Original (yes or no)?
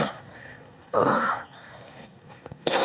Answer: no